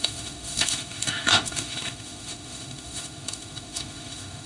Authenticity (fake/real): fake